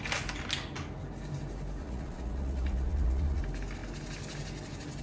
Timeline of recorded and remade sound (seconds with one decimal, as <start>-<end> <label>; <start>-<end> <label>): 0.0-1.8 recorded; 1.8-3.4 remade; 3.4-5.0 recorded